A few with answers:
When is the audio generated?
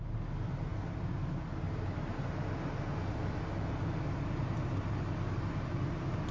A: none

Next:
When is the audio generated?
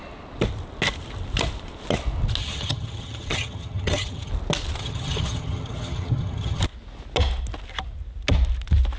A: 2.4-4.3 (vocoder, HiFi-GAN); 4.8-6.6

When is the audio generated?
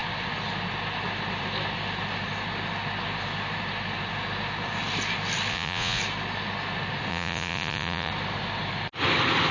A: 5.5-6.0 (vocoder, Vocos); 7.1-8.1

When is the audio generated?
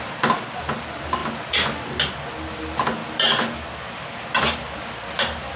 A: none